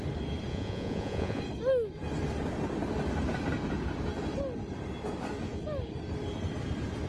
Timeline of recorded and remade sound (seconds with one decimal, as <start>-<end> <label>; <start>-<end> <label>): 0.0-0.5 recorded; 0.5-1.4 remade; 1.4-7.1 recorded